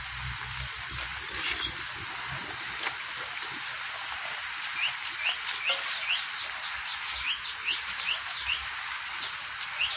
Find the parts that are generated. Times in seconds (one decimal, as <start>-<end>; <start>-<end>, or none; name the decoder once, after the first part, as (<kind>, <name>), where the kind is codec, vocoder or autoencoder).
none